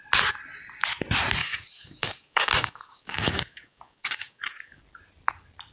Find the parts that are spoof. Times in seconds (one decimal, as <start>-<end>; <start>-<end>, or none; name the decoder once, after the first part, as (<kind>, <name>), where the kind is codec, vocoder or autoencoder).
1.4-4.8 (codec, DAC)